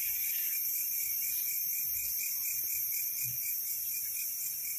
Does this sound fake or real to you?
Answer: fake